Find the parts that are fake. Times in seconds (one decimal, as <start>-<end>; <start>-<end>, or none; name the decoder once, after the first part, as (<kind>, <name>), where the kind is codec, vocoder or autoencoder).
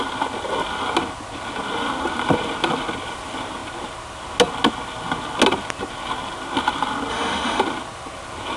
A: 7.1-7.6 (autoencoder, DAC-VAE)